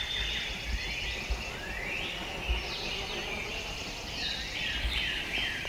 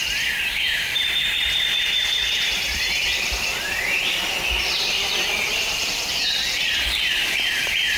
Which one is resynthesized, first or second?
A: second